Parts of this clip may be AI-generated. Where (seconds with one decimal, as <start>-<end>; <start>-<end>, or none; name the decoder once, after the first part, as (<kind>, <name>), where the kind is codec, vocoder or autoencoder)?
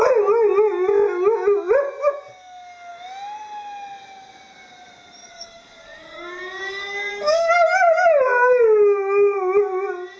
5.3-7.5 (codec, DAC)